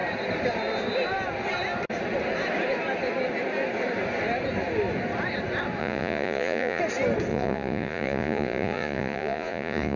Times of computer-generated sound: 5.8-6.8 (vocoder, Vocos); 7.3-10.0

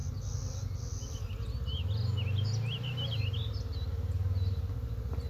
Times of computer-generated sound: none

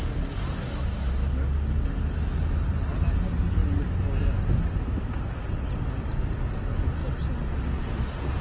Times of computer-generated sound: none

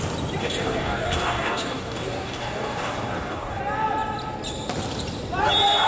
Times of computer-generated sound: 0.4-3.6 (codec, DAC)